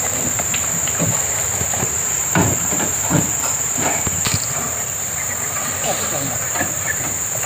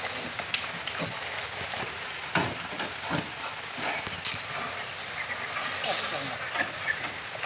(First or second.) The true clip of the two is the second